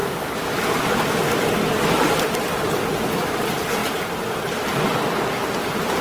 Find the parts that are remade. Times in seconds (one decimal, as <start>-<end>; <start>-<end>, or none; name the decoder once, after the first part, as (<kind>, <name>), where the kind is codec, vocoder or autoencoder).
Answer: 0.0-3.8 (vocoder, BigVGAN v2); 4.9-6.0